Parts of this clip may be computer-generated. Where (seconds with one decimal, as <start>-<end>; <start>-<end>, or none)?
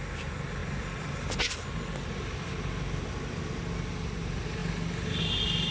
none